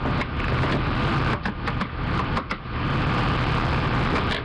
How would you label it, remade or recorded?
recorded